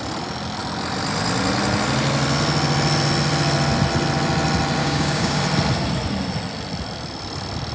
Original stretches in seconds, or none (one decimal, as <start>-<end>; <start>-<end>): 0.0-4.8; 5.4-7.7